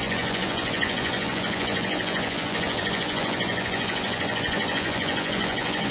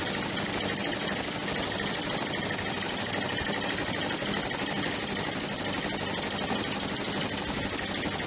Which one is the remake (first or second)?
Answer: first